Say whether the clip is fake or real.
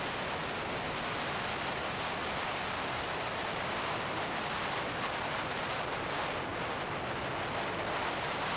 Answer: real